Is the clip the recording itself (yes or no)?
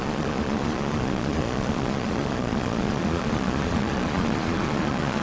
no